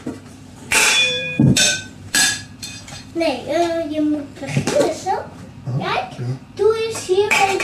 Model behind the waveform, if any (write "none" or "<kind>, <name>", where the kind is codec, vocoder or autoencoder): vocoder, BigVGAN v2